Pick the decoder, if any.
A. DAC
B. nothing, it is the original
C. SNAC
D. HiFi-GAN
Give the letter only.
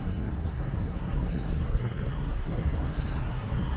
C